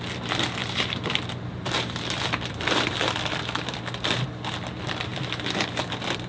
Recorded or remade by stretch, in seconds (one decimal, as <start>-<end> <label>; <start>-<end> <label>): 0.0-0.6 recorded; 0.6-3.8 remade; 3.8-5.1 recorded; 5.1-6.3 remade